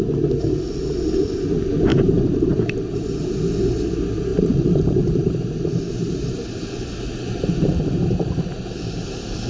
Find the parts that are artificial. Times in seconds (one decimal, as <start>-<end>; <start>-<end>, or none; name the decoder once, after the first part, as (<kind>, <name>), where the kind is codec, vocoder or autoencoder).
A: 1.9-2.8 (vocoder, BigVGAN v2); 4.3-8.0